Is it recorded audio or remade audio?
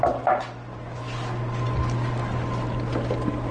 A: recorded